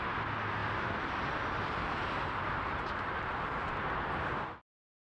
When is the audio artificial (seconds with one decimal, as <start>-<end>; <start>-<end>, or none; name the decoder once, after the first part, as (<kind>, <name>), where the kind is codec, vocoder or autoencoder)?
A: none